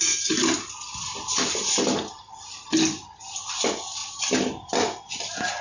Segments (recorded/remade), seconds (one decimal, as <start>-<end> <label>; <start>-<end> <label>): 0.0-5.6 recorded